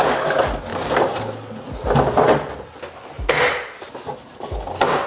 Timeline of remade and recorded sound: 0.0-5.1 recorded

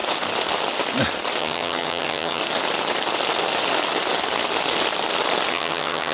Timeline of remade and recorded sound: 0.0-1.4 recorded; 1.4-2.4 remade; 2.4-5.5 recorded; 5.5-6.1 remade